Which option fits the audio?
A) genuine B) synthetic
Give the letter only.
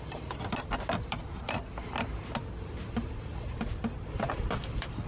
A